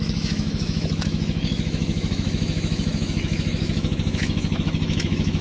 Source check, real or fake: fake